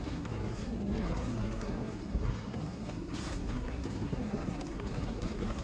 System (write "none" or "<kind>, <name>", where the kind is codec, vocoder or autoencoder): codec, SNAC